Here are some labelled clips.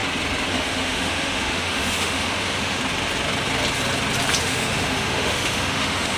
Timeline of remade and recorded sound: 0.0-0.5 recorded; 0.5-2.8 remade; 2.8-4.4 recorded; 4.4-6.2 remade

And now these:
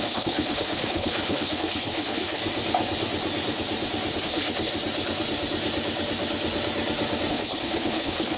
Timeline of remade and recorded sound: 0.0-2.4 remade; 2.4-4.2 recorded; 4.2-4.7 remade; 4.7-7.3 recorded; 7.3-8.4 remade

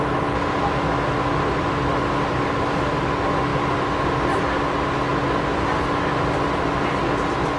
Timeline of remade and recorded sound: 0.0-7.6 recorded

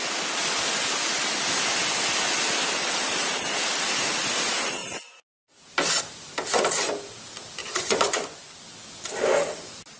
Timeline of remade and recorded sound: 0.0-7.6 recorded; 7.6-8.5 remade; 8.5-10.0 recorded